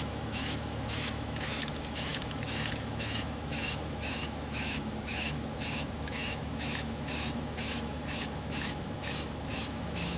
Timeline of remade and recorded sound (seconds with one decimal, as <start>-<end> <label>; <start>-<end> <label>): 0.0-10.2 remade